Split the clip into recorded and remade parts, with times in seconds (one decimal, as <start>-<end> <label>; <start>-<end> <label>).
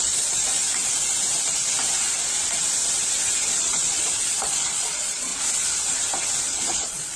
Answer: 0.0-0.6 remade; 0.6-3.6 recorded; 3.6-5.3 remade; 5.3-6.4 recorded; 6.4-7.2 remade